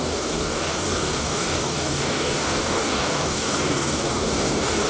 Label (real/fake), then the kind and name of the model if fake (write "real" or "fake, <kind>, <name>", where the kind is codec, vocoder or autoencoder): fake, codec, DAC